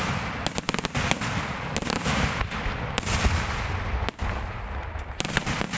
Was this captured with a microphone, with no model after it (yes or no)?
yes